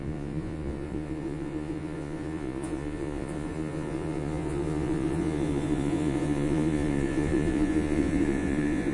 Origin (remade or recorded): remade